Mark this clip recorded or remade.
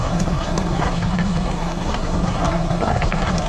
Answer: remade